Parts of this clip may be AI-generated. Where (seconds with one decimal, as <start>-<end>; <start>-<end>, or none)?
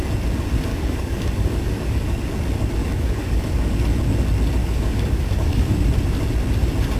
0.7-2.3; 2.8-3.7; 4.6-5.8